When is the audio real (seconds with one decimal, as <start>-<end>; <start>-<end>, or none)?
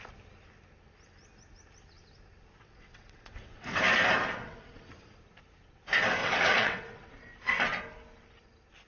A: 0.0-2.6; 3.8-4.4; 4.9-6.2; 7.1-8.9